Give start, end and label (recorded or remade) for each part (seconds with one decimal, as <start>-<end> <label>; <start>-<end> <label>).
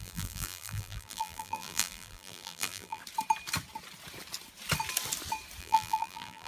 0.0-3.0 remade; 3.0-5.6 recorded; 5.6-6.5 remade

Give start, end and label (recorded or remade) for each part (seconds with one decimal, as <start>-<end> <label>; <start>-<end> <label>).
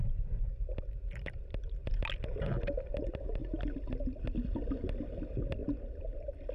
0.0-0.7 recorded; 0.7-2.9 remade; 2.9-5.6 recorded; 5.6-6.5 remade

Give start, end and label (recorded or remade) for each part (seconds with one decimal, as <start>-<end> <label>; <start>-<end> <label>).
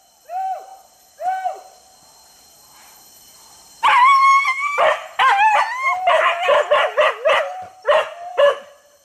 0.0-4.7 remade; 4.7-6.2 recorded; 6.2-9.0 remade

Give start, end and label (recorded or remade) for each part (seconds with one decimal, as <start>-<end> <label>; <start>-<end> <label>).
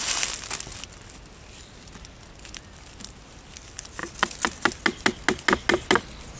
0.0-6.4 recorded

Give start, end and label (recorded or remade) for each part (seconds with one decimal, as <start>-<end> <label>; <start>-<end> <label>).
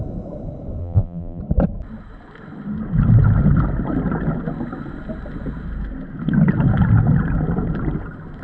0.0-0.8 recorded; 0.8-1.4 remade; 1.4-8.4 recorded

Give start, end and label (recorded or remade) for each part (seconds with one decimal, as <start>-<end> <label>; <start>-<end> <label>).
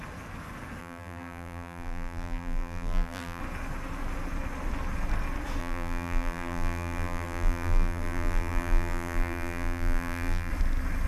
0.0-0.8 recorded; 0.8-3.4 remade; 3.4-5.6 recorded; 5.6-10.5 remade; 10.5-11.1 recorded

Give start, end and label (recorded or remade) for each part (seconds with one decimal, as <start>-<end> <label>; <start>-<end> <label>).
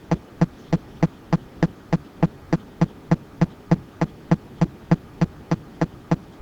0.0-6.4 recorded